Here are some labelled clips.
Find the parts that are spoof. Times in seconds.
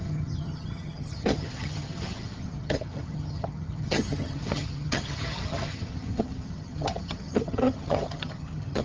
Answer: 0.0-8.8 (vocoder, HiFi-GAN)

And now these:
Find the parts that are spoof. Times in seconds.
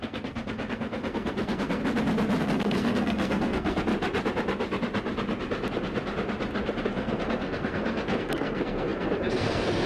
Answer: 0.0-1.8 (codec, SNAC); 2.4-3.9; 6.8-9.9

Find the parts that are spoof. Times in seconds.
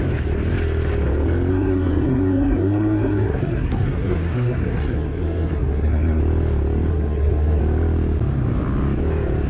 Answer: 1.5-6.2 (codec, SNAC); 6.9-7.6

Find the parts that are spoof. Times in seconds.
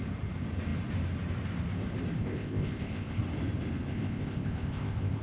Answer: 2.2-3.2 (codec, ZipCodec); 3.9-5.2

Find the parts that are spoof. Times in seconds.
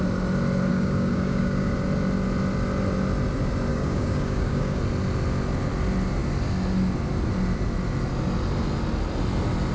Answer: 0.7-1.7 (codec, DAC); 3.7-4.8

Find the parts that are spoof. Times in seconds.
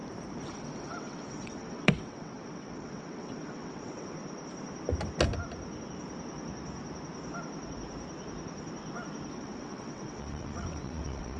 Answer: 0.5-4.2 (vocoder, WaveNeXt); 9.3-11.4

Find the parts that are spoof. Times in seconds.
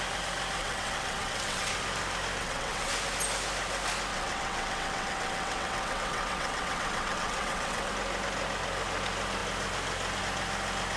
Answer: 0.6-1.7 (vocoder, WaveNeXt); 2.4-2.9; 4.1-7.9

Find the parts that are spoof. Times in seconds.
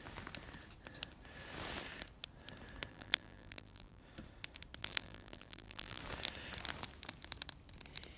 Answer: 2.9-4.0 (vocoder, BigVGAN v2); 4.8-6.0